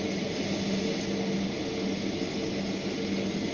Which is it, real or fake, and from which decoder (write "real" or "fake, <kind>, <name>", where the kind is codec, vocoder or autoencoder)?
real